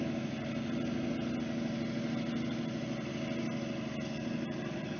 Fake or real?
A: real